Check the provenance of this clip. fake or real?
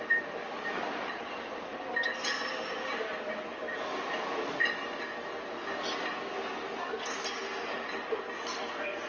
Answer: real